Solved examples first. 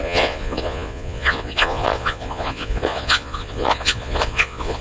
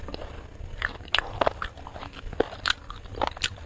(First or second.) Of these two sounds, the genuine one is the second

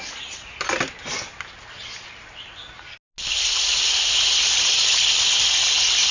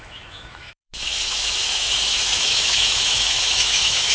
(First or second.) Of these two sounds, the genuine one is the first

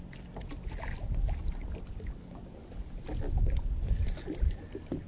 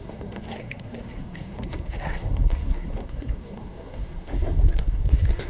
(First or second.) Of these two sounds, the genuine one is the first